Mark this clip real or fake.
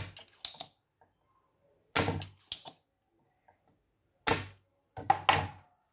real